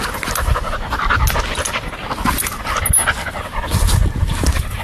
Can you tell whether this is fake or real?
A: real